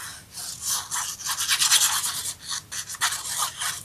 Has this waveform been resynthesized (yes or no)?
no